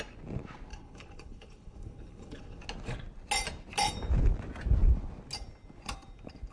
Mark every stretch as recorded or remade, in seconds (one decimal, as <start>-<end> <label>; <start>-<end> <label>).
0.0-0.7 recorded; 0.7-2.6 remade; 2.6-6.5 recorded